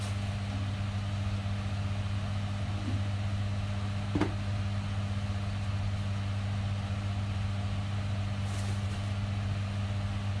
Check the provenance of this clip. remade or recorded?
recorded